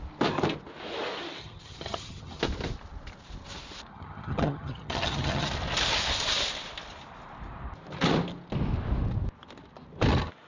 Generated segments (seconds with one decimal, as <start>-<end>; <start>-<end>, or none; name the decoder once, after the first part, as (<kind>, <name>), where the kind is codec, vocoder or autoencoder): 1.4-2.4 (vocoder, HiFi-GAN); 3.9-5.5